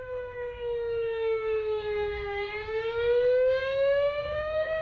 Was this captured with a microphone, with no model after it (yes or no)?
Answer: no